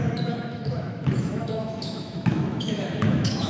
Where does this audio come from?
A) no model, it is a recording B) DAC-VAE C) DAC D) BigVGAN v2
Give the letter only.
B